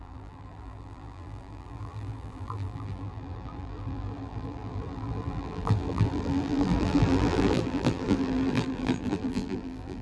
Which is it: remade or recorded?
remade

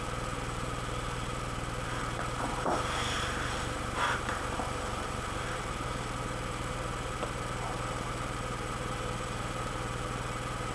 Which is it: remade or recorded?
remade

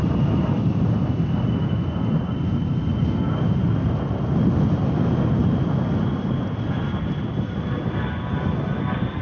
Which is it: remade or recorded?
recorded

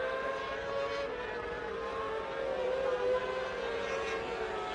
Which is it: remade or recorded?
recorded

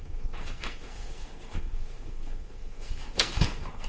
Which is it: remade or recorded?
remade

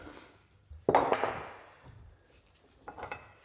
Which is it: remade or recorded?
recorded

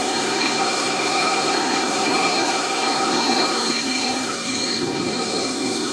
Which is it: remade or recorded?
remade